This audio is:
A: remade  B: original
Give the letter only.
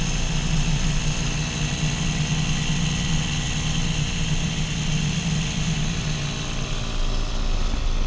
B